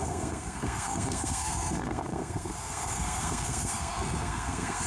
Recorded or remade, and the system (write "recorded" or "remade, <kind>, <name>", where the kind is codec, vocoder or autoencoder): remade, codec, SNAC